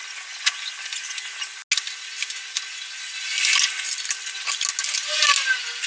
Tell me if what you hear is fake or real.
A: real